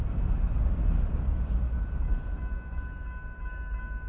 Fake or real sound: real